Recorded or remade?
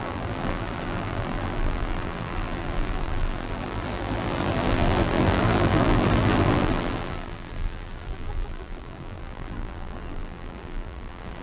remade